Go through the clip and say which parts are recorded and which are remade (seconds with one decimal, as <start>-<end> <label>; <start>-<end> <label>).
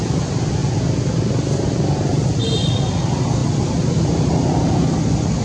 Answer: 0.0-5.4 recorded